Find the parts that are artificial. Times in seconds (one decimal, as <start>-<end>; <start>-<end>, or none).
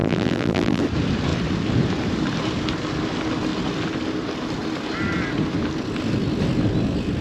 0.0-0.8